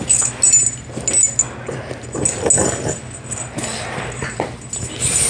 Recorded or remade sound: recorded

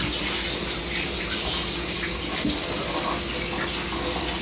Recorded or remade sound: recorded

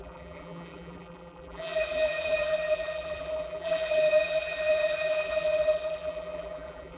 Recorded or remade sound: remade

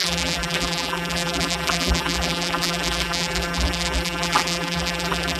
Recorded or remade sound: remade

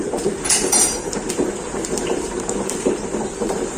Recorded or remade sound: remade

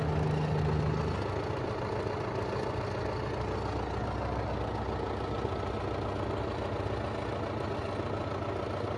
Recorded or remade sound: recorded